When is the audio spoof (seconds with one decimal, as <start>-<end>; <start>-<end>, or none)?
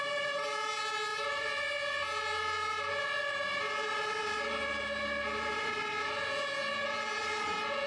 none